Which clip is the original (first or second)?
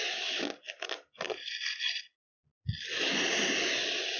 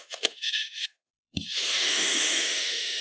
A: first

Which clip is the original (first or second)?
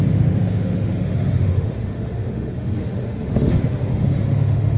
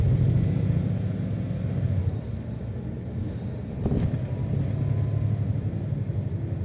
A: second